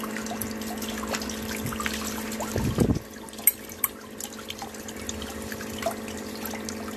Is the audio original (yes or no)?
yes